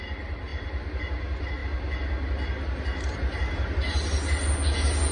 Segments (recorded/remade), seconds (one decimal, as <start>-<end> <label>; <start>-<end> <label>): 0.0-5.1 recorded